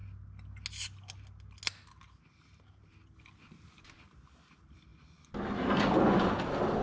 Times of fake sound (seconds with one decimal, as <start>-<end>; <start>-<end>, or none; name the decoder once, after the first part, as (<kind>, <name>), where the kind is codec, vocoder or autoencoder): none